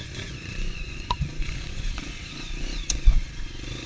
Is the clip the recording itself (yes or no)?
no